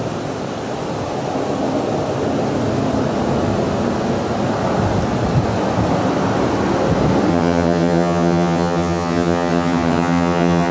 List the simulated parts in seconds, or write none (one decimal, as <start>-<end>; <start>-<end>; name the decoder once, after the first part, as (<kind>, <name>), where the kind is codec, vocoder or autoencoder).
7.3-10.7 (vocoder, HiFi-GAN)